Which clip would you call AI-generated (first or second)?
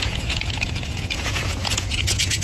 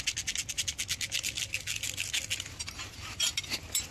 first